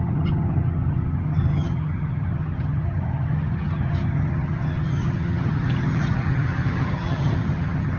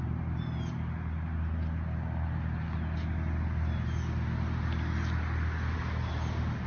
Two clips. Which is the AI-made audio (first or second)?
first